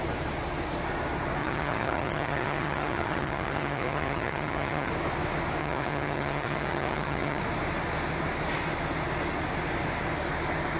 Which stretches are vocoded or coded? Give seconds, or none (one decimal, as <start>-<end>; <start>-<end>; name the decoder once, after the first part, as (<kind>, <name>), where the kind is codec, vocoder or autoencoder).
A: 1.4-4.9 (vocoder, HiFi-GAN); 5.6-7.4